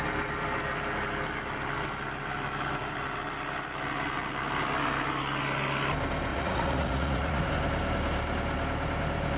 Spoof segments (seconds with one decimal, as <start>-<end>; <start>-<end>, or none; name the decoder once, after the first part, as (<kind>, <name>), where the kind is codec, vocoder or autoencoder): 6.3-7.5 (vocoder, Vocos)